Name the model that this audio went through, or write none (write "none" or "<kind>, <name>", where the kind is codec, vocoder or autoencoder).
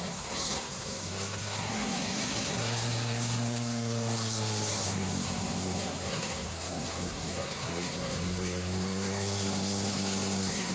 codec, SNAC